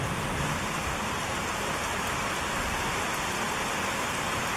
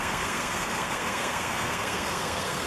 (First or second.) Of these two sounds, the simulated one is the second